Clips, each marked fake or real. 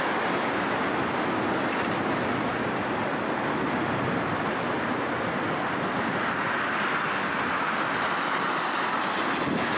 real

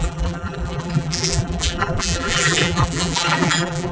fake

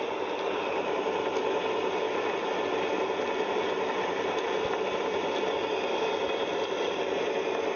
real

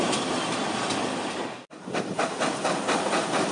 real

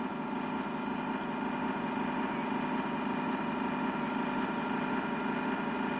real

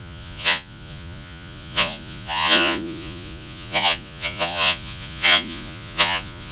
fake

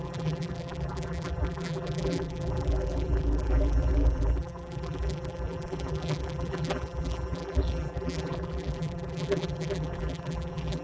fake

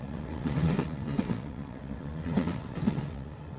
fake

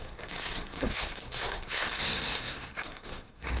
fake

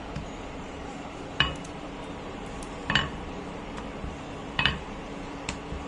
fake